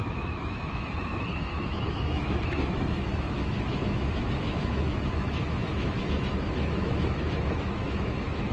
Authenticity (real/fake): fake